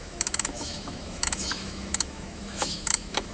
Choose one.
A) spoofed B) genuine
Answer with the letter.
A